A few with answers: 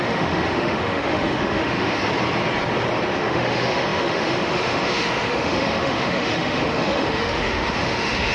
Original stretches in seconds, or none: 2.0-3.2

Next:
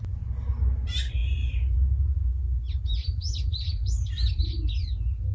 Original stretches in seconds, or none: 0.0-1.2; 4.4-5.3

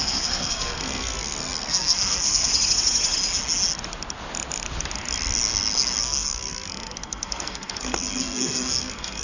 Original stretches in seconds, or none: 2.5-6.0

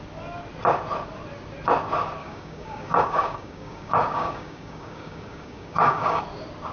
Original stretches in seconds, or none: 0.0-2.2; 6.2-6.7

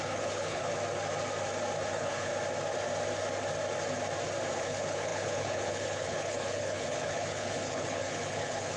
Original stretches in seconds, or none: 0.7-1.9; 2.3-4.5